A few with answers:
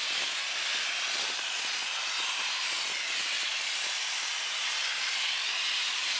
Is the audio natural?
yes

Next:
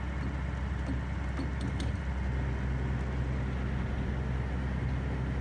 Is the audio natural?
yes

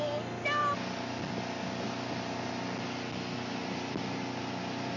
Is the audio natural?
yes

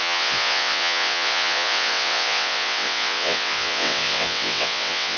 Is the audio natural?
no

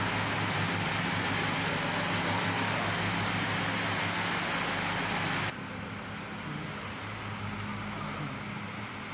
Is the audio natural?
yes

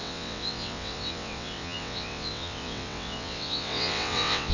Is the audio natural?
no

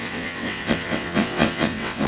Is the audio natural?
no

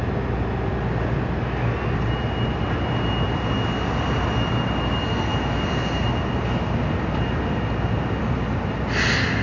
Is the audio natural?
yes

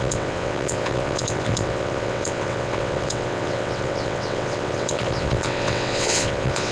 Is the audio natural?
no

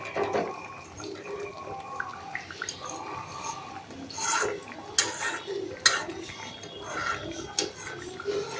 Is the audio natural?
yes